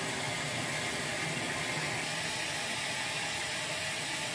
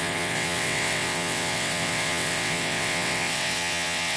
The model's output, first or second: second